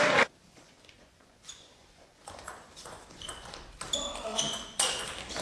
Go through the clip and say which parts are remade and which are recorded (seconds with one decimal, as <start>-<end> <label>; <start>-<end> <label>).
0.0-0.5 recorded; 0.5-3.7 remade; 3.7-4.3 recorded; 4.3-5.0 remade; 5.0-5.4 recorded